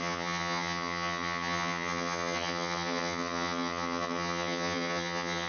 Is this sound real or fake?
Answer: fake